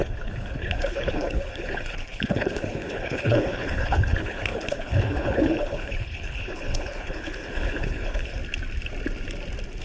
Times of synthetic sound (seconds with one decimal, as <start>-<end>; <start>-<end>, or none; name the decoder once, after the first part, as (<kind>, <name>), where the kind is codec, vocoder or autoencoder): 0.0-8.4 (codec, HILCodec)